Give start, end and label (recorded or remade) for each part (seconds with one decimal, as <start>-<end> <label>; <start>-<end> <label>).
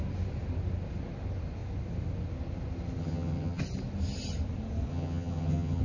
0.0-3.0 recorded; 3.0-3.6 remade; 3.6-4.9 recorded; 4.9-5.8 remade